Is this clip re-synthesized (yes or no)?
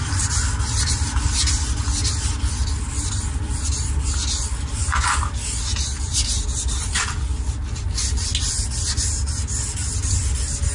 no